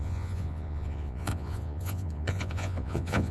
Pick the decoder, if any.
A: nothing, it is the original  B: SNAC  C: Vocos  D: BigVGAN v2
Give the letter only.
C